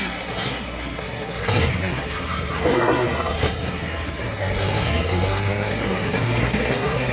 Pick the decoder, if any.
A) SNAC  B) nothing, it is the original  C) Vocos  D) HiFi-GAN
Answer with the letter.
A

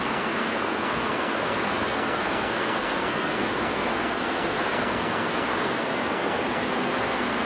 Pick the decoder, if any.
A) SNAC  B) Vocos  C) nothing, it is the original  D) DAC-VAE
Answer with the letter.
A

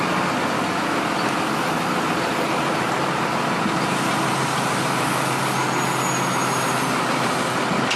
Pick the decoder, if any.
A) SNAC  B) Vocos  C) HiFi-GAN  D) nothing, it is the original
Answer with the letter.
D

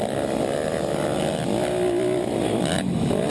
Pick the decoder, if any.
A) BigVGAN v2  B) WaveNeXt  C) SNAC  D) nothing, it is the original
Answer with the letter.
D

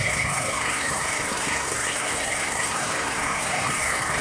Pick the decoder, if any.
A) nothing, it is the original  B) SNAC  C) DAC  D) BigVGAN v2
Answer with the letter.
B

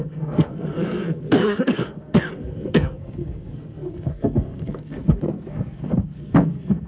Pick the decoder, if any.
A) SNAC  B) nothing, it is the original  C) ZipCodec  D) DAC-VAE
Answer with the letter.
A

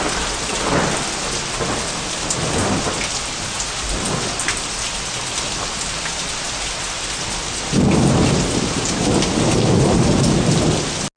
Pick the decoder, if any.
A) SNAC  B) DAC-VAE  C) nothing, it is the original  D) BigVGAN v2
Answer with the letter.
C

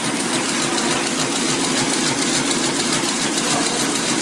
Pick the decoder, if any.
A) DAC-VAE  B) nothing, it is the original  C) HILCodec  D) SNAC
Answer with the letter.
B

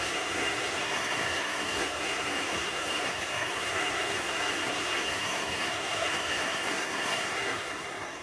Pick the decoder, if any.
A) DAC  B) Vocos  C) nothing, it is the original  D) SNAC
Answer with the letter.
D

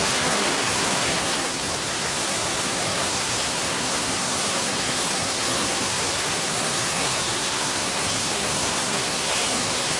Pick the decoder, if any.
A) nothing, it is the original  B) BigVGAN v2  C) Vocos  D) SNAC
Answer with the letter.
D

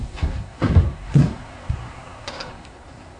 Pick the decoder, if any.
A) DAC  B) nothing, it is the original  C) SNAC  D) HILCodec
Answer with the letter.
C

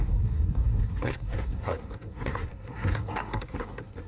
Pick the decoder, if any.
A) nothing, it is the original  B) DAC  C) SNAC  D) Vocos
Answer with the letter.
C